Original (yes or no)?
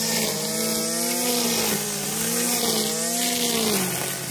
yes